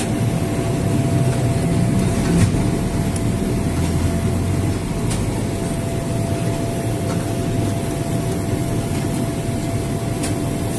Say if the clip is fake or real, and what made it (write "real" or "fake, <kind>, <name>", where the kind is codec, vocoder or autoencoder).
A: real